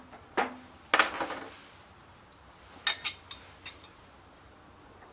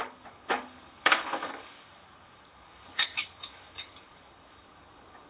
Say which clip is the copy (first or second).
second